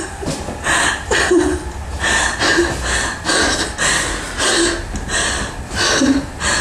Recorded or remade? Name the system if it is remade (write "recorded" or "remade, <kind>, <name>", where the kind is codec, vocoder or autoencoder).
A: recorded